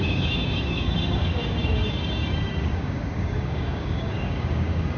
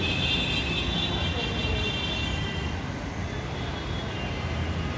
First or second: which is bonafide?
second